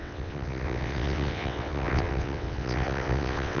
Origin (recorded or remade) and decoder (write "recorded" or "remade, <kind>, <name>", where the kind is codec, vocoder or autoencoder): remade, vocoder, WaveNeXt